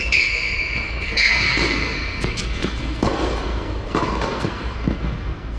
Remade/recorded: remade